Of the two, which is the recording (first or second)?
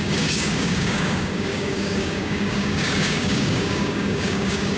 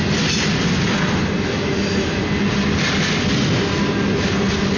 second